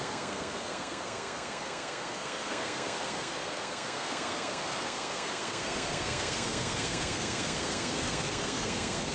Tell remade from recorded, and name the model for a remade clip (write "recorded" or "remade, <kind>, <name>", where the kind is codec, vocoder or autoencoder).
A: remade, codec, SNAC